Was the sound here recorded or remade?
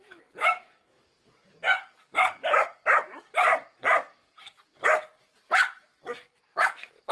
remade